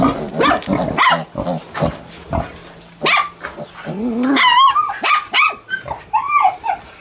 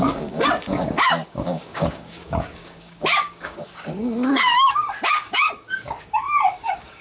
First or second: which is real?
first